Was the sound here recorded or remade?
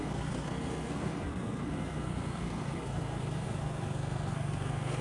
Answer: remade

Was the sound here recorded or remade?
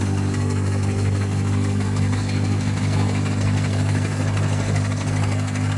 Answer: remade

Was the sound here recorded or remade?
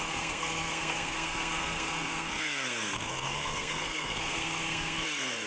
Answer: remade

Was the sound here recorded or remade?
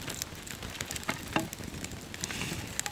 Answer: recorded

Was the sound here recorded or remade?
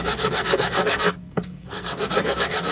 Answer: remade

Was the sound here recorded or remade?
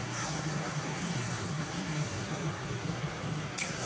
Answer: remade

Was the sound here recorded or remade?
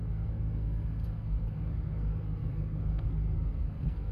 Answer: remade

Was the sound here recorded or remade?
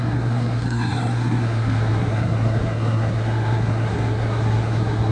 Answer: remade